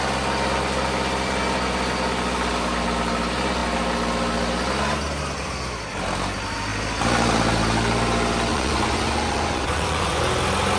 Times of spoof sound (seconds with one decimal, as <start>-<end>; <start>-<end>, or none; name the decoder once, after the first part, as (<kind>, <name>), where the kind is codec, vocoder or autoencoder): 8.5-10.2 (vocoder, Vocos)